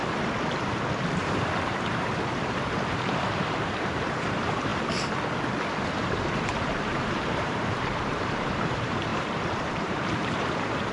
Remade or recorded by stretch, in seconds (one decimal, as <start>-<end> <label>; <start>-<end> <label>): 0.0-1.2 recorded; 1.2-4.7 remade; 4.7-6.0 recorded; 6.0-10.9 remade